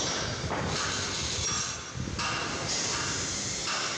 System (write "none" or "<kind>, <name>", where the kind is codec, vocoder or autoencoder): none